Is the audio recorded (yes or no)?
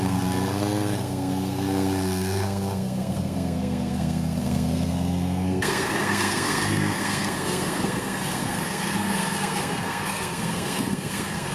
no